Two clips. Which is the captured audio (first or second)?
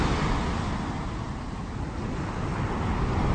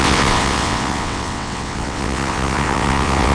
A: first